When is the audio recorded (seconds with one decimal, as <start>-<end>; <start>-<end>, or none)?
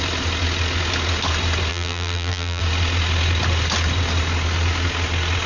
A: 0.0-1.7; 2.6-5.5